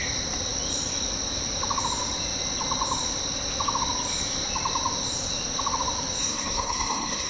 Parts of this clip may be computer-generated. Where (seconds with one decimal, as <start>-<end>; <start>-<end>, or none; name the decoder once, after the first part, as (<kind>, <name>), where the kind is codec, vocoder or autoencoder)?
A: 6.2-7.3 (codec, SNAC)